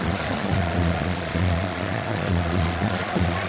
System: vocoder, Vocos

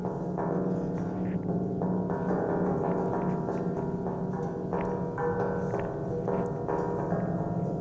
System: none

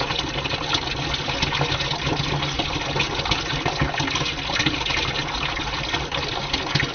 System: none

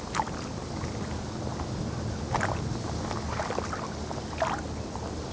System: none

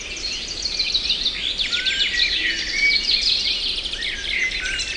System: none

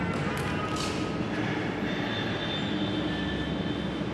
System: none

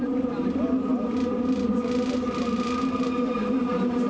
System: none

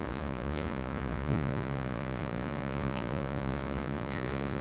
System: vocoder, Vocos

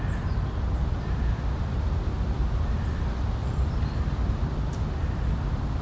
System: none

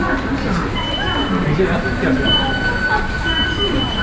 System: none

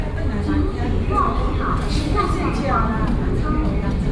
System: none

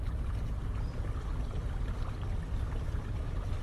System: none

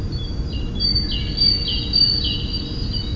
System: none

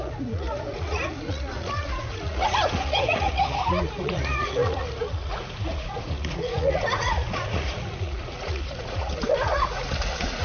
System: vocoder, Vocos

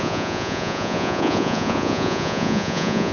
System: vocoder, Vocos